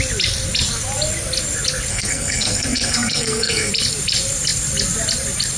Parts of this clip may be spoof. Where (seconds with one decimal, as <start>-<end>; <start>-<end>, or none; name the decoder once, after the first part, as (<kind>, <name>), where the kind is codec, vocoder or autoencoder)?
1.9-3.7 (codec, SNAC)